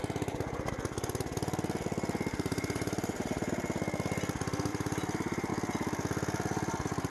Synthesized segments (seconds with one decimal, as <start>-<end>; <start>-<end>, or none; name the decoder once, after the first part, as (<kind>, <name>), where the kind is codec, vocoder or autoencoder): 2.3-3.5 (vocoder, BigVGAN v2); 4.7-5.5